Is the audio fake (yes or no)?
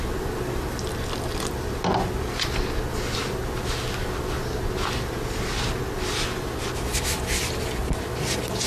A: no